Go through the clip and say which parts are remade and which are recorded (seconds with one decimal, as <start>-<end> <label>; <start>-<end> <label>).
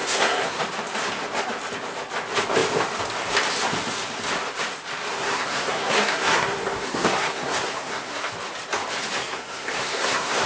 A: 0.0-0.6 remade; 0.6-5.1 recorded; 5.1-8.3 remade; 8.3-9.2 recorded; 9.2-10.5 remade